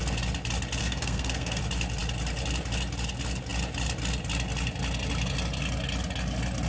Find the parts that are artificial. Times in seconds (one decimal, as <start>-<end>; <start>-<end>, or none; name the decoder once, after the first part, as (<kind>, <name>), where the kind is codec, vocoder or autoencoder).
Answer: 0.8-1.6 (codec, SNAC)